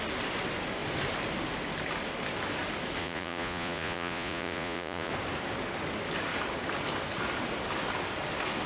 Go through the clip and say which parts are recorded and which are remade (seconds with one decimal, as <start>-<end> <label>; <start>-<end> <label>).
0.0-3.0 recorded; 3.0-5.1 remade; 5.1-8.7 recorded